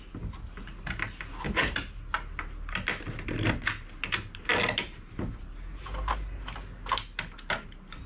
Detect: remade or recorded recorded